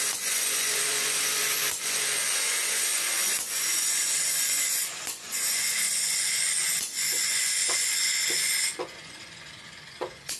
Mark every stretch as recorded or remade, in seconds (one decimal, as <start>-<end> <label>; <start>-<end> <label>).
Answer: 0.0-10.4 remade